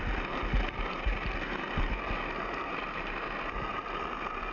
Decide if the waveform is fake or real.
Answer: real